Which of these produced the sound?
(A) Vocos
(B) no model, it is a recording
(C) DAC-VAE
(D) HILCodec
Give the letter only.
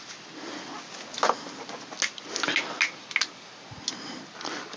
B